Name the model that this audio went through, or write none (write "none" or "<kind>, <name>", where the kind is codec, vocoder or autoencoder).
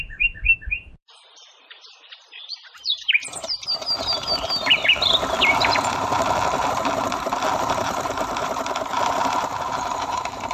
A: vocoder, BigVGAN v2